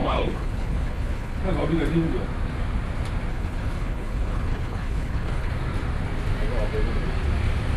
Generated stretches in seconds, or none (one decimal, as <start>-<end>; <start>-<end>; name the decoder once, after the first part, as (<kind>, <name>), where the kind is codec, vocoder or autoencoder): 0.0-1.4 (codec, HILCodec); 3.3-5.5